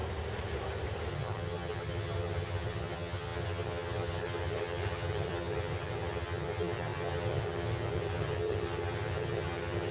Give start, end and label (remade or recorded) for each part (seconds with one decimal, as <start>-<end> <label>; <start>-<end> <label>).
0.0-1.1 recorded; 1.1-9.9 remade